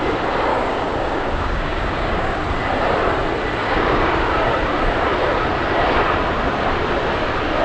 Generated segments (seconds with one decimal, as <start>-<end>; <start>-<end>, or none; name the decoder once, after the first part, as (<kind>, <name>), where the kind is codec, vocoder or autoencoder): 0.5-2.4 (codec, DAC); 3.6-4.3